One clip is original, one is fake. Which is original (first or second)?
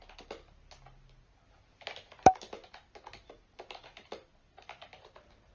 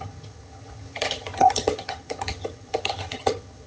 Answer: first